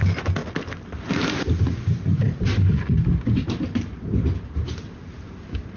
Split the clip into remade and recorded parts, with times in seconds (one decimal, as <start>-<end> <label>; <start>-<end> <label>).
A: 0.0-0.4 recorded; 0.4-1.0 remade; 1.0-5.8 recorded